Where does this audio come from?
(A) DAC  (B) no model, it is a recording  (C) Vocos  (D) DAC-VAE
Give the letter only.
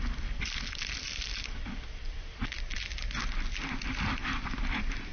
B